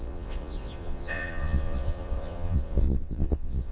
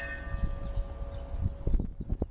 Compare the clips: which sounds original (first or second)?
second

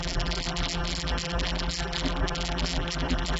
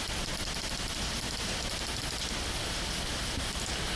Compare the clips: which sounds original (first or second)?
second